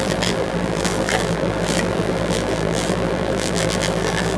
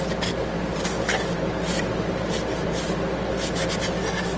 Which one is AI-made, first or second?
first